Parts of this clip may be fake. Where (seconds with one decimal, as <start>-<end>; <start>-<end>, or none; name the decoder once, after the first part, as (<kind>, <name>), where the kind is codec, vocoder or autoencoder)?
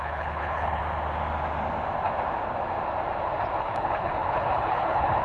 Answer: 0.0-0.8 (codec, HILCodec); 3.6-5.2